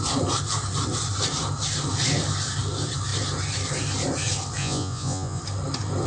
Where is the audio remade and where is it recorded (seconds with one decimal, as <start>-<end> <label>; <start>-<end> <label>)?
0.0-4.6 recorded; 4.6-5.4 remade; 5.4-6.1 recorded